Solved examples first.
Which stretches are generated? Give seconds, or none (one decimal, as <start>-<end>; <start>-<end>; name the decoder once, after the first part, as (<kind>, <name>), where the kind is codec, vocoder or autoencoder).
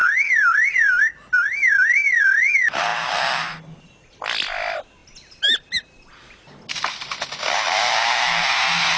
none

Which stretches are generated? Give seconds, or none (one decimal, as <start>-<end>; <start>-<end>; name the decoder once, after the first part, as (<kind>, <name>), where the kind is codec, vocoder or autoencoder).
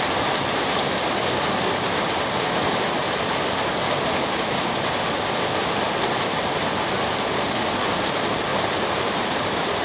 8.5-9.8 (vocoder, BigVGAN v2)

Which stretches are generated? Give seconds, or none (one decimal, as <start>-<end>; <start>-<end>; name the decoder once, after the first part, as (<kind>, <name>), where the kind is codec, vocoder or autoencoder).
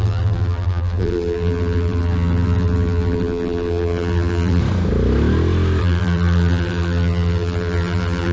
0.0-4.6 (vocoder, BigVGAN v2); 5.8-8.3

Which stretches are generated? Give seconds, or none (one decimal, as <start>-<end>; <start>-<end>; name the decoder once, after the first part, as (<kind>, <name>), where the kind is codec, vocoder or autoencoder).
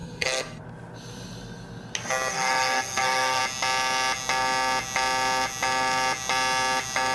0.0-0.6 (codec, SNAC); 2.3-3.4